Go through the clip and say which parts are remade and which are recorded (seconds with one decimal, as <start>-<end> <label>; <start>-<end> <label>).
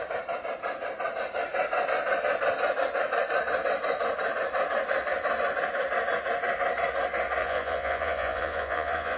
0.0-7.4 recorded; 7.4-9.2 remade